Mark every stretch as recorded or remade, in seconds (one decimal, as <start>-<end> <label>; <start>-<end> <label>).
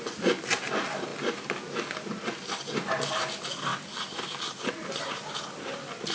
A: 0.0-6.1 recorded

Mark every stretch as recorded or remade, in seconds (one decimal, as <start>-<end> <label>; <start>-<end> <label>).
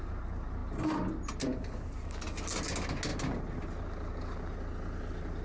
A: 0.0-5.4 recorded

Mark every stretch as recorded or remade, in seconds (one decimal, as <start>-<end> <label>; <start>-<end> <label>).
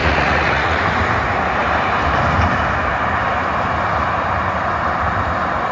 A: 0.0-0.8 remade; 0.8-5.7 recorded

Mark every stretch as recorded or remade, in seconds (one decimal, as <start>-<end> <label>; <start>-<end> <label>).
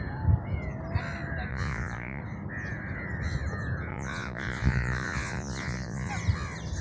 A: 0.0-1.5 recorded; 1.5-2.2 remade; 2.2-3.9 recorded; 3.9-6.1 remade; 6.1-6.8 recorded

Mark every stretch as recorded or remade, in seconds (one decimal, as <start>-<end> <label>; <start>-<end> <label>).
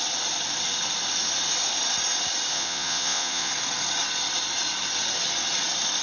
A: 0.0-2.5 recorded; 2.5-3.5 remade; 3.5-6.0 recorded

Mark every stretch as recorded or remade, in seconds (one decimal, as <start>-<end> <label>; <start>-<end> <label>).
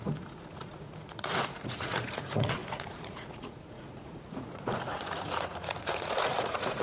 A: 0.0-6.8 remade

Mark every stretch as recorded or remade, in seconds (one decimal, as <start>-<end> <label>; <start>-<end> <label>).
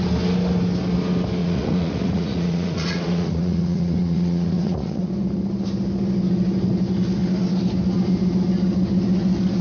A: 0.0-1.4 recorded; 1.4-5.1 remade; 5.1-9.6 recorded